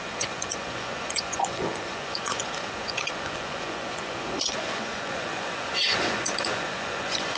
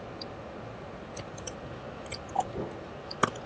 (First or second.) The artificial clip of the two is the first